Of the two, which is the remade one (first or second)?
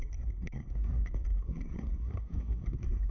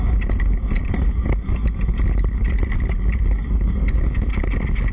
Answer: first